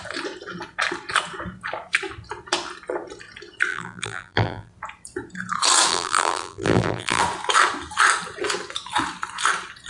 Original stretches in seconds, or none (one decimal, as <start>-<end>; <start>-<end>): 0.0-3.7; 4.7-5.9; 7.2-9.9